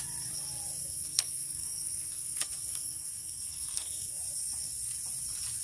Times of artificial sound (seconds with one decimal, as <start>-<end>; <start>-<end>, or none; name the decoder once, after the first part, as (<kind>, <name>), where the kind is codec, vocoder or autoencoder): 0.8-4.2 (codec, SNAC)

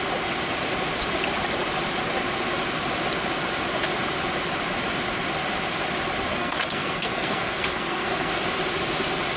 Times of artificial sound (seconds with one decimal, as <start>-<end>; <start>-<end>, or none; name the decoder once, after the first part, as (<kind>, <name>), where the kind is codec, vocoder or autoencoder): 6.3-8.4 (codec, SNAC)

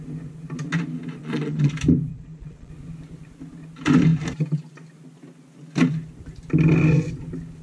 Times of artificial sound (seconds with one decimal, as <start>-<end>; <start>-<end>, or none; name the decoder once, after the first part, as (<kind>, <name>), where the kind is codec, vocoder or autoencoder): 1.2-1.7 (vocoder, Vocos); 2.1-2.7

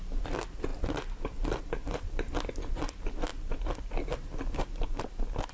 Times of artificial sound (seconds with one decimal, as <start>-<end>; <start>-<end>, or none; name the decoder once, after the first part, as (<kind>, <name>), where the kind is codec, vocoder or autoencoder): none